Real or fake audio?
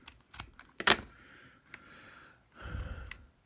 real